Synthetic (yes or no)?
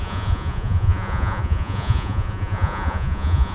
yes